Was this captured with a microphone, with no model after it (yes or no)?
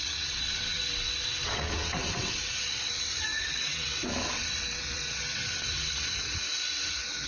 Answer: no